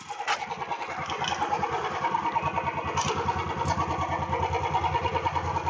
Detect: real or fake real